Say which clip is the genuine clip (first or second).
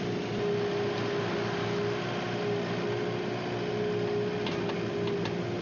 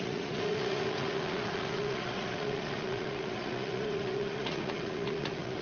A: first